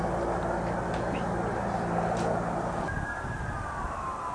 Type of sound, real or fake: real